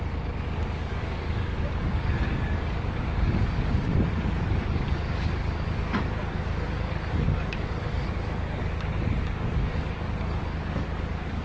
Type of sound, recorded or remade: remade